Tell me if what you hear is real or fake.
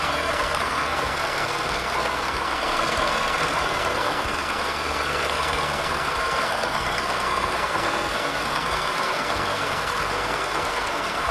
fake